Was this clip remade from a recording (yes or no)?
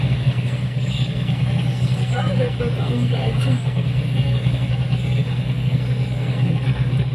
yes